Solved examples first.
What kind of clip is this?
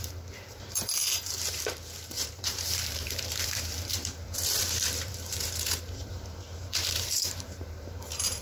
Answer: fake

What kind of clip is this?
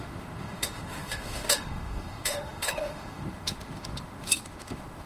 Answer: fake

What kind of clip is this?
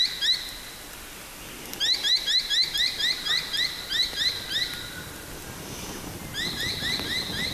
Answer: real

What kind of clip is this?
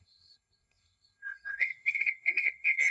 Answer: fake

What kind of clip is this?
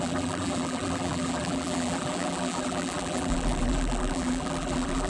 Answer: fake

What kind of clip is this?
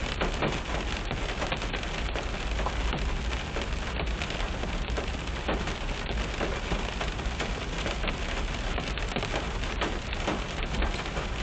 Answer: real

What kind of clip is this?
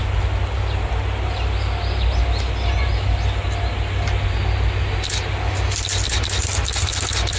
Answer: real